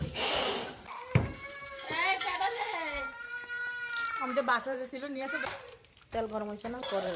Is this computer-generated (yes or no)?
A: yes